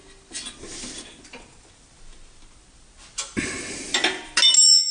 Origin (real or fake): real